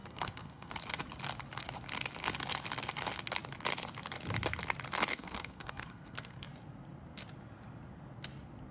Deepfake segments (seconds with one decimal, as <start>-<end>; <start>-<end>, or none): 0.0-0.7; 5.1-6.5